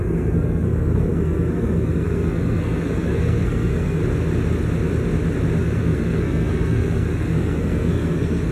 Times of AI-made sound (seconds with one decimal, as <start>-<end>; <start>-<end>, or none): 0.0-4.0; 5.6-8.5